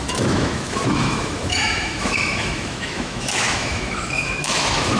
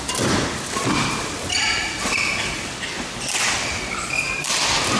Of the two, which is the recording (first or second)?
second